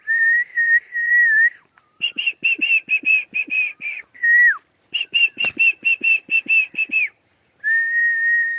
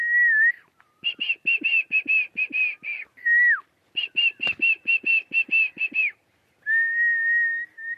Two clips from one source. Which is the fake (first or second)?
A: first